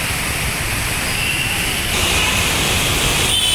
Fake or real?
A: fake